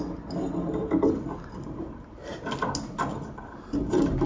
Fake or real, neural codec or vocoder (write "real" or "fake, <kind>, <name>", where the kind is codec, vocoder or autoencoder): real